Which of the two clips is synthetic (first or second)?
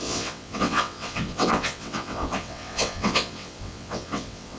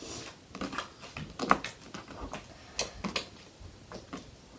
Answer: first